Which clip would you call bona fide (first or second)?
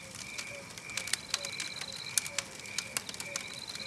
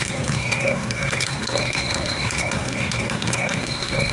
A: first